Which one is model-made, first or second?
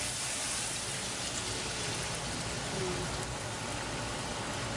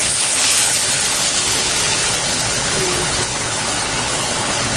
second